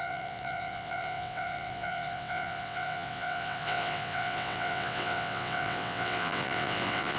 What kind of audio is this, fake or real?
fake